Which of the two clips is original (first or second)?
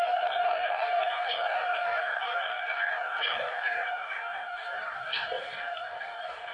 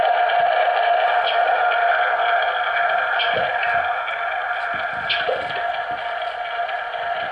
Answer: second